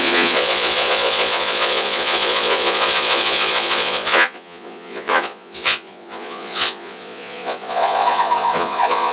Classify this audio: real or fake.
fake